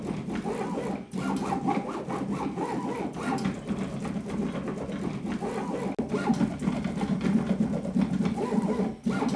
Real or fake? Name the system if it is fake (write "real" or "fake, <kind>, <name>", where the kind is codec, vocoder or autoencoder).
real